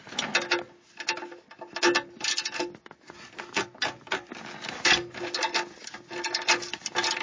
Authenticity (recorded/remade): recorded